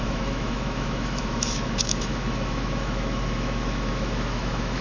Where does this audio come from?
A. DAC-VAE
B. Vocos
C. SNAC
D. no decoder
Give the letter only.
A